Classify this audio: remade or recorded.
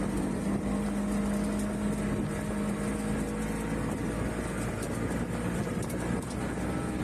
recorded